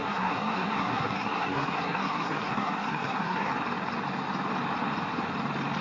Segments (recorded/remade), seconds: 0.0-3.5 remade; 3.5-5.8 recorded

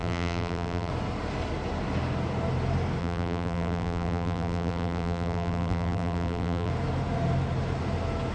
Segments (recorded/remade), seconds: 0.0-0.9 remade; 0.9-3.0 recorded; 3.0-6.7 remade; 6.7-8.3 recorded

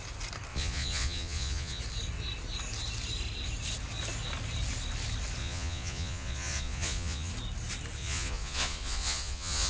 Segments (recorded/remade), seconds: 0.0-0.5 recorded; 0.5-1.8 remade; 1.8-5.4 recorded; 5.4-7.3 remade; 7.3-8.0 recorded; 8.0-9.7 remade

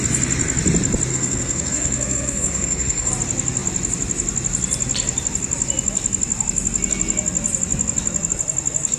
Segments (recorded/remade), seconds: 0.0-1.1 recorded; 1.1-3.1 remade; 3.1-9.0 recorded

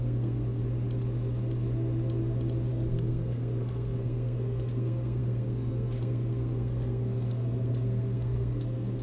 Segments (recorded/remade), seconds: 0.0-0.6 remade; 0.6-2.7 recorded; 2.7-9.0 remade

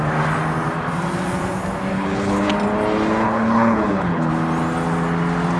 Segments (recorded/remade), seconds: 0.0-1.9 recorded; 1.9-2.5 remade; 2.5-3.2 recorded; 3.2-4.3 remade; 4.3-5.6 recorded